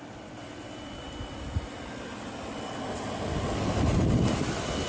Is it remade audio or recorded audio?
recorded